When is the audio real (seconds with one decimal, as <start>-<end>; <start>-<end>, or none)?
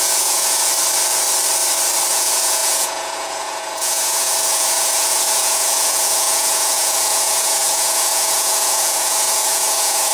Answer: 0.7-2.1